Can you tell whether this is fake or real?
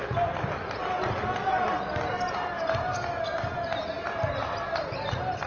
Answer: real